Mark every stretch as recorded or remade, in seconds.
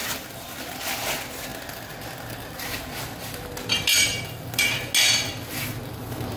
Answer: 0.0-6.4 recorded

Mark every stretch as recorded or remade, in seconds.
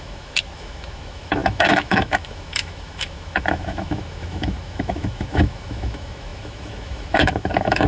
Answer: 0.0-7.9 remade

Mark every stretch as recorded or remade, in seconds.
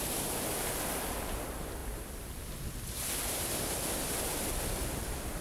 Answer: 0.0-1.8 recorded; 1.8-4.5 remade; 4.5-5.4 recorded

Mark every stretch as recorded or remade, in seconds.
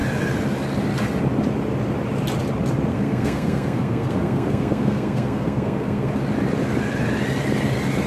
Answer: 0.0-2.9 recorded; 2.9-6.1 remade; 6.1-8.1 recorded